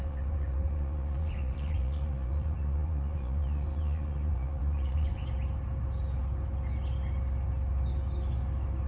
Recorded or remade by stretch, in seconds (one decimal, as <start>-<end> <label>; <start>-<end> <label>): 0.0-5.2 remade; 5.2-8.9 recorded